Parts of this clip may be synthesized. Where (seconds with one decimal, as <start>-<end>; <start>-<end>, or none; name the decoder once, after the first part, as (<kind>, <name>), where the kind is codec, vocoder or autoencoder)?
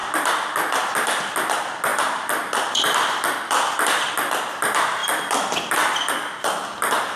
0.0-7.2 (vocoder, BigVGAN v2)